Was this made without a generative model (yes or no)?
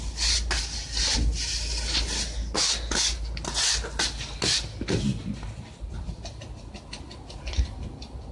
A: yes